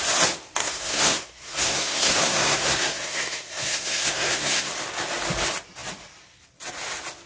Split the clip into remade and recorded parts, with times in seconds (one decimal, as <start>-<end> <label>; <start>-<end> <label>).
0.0-0.6 recorded; 0.6-4.7 remade; 4.7-7.3 recorded